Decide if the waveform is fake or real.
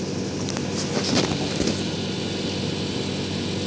real